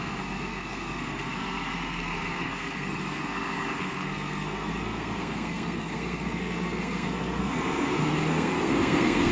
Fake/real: fake